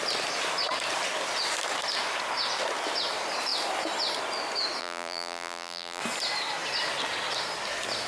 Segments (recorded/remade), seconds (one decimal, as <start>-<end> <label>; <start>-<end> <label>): 0.0-4.8 recorded; 4.8-6.0 remade; 6.0-8.1 recorded